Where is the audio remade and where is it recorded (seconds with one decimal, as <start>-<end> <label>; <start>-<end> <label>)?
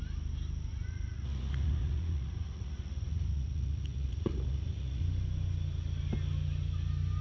0.0-0.7 recorded; 0.7-5.0 remade; 5.0-7.2 recorded